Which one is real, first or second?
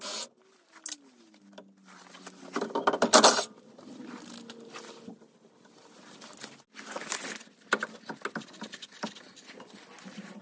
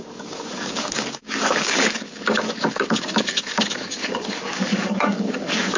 first